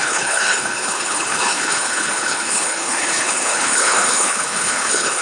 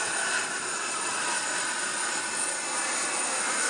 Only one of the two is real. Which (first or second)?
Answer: second